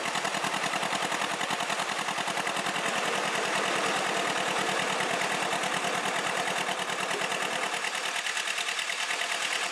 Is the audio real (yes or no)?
yes